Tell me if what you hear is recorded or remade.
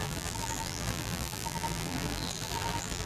remade